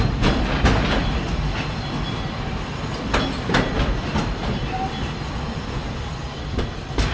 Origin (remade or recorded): recorded